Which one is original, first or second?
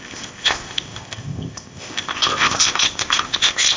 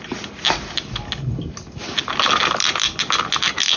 second